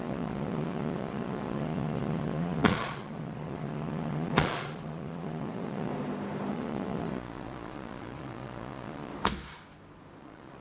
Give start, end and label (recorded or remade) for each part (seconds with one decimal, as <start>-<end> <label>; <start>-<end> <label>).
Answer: 0.0-5.9 remade; 5.9-6.5 recorded; 6.5-9.1 remade; 9.1-10.2 recorded; 10.2-10.6 remade